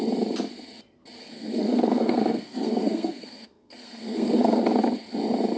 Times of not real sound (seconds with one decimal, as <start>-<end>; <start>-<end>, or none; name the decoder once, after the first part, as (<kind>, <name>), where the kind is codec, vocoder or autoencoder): 1.2-4.6 (codec, SNAC)